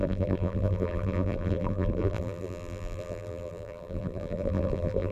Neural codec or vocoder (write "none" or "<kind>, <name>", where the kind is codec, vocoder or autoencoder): vocoder, BigVGAN v2